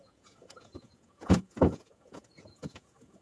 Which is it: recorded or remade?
remade